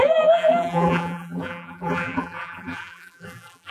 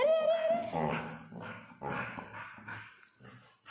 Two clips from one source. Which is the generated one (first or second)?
first